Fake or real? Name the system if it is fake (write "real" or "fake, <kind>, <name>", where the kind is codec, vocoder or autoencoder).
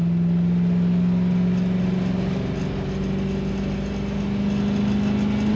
real